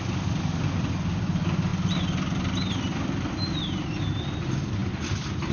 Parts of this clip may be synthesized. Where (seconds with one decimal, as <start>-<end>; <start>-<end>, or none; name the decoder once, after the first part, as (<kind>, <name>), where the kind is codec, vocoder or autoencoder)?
none

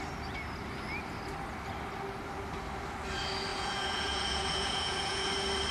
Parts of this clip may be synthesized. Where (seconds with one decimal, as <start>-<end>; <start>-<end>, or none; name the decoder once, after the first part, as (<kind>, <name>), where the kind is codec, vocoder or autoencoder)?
3.5-5.3 (vocoder, Vocos)

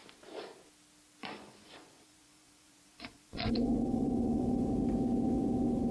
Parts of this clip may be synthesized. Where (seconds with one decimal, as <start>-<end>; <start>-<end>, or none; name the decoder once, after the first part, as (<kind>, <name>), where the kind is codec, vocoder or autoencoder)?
1.2-4.7 (vocoder, Vocos)

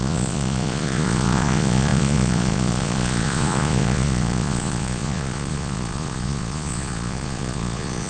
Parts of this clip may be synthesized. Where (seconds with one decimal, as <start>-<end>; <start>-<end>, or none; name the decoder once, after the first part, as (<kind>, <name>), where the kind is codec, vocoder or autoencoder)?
0.0-8.1 (vocoder, Vocos)

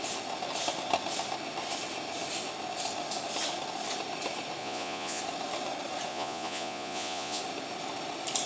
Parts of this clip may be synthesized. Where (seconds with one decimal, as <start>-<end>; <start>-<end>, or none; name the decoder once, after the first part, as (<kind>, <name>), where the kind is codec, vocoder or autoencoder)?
4.6-5.2 (vocoder, Vocos); 6.1-7.4

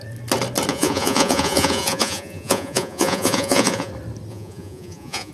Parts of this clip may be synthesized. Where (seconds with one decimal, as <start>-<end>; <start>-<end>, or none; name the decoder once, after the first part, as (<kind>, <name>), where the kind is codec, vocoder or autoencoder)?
0.7-3.9 (vocoder, Vocos); 4.3-5.3